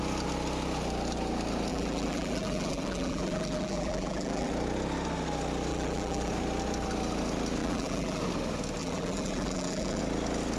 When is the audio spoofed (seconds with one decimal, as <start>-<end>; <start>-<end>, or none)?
1.7-4.5; 5.7-6.3; 7.6-8.2; 8.8-10.0